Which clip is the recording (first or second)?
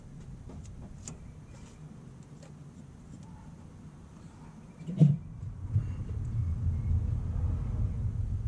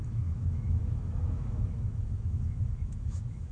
first